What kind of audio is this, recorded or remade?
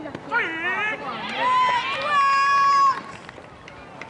recorded